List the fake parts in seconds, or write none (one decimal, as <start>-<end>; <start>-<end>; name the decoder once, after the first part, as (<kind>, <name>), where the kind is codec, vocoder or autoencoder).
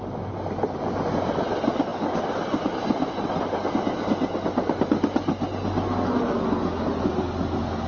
none